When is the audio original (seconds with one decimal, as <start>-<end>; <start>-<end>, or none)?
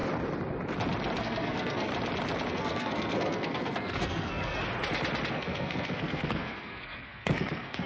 0.0-1.2; 1.9-2.5; 4.6-5.3